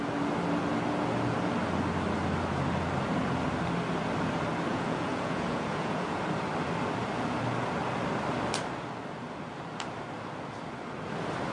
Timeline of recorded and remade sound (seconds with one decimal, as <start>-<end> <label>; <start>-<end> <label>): 0.0-4.7 recorded; 4.7-6.2 remade; 6.2-11.5 recorded